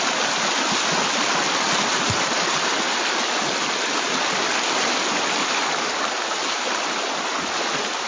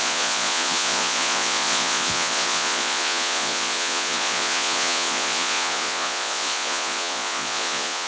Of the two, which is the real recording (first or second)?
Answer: first